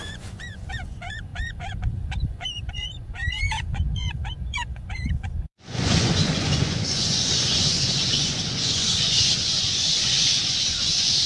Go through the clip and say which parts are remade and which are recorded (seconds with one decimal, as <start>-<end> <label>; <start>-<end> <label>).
0.0-11.3 remade